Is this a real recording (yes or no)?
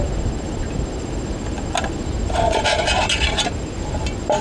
yes